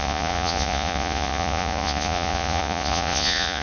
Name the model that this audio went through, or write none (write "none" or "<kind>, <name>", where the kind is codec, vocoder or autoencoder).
vocoder, Vocos